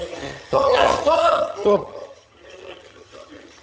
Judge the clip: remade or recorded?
remade